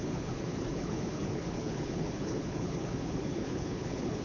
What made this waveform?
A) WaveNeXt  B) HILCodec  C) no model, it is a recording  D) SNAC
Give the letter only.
B